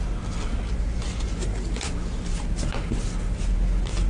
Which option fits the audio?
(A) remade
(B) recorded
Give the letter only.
B